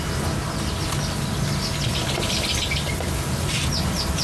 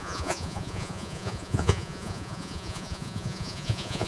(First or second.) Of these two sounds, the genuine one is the first